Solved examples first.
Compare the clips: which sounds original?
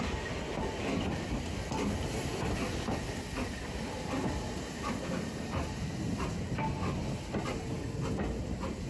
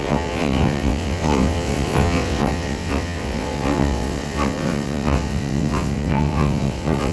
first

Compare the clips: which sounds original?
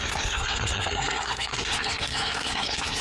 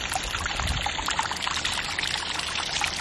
second